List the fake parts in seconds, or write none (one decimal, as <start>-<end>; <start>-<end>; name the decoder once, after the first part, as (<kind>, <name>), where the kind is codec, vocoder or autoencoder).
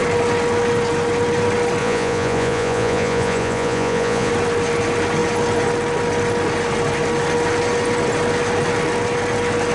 1.8-4.3 (vocoder, Vocos)